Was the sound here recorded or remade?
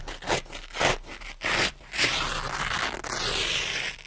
recorded